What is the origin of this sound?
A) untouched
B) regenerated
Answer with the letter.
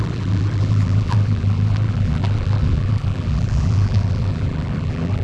B